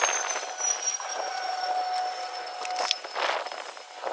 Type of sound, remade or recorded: recorded